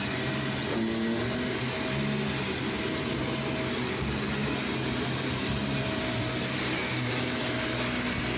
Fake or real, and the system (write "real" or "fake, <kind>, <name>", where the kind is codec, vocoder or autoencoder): real